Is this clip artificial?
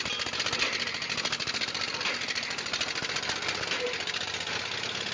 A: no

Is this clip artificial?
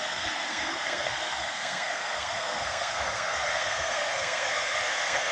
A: yes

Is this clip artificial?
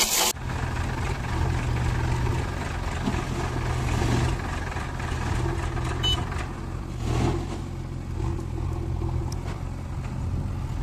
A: no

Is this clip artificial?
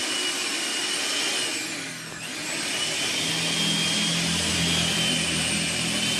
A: no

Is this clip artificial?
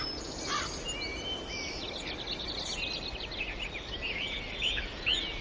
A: no